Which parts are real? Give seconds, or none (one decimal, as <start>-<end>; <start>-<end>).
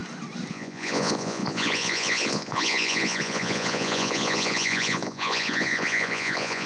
0.0-0.5